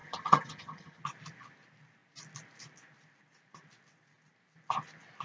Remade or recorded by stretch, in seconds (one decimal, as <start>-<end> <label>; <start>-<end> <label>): 0.0-1.0 remade; 1.0-5.2 recorded